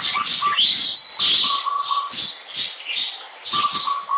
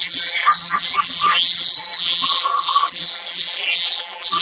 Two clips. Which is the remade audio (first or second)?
second